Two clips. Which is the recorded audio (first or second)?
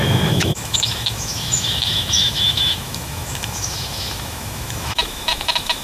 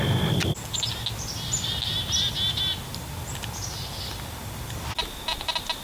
second